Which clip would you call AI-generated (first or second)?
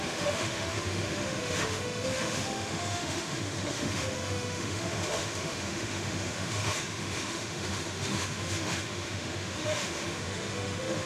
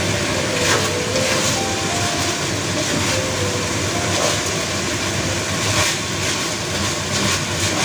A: first